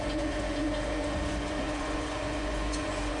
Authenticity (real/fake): fake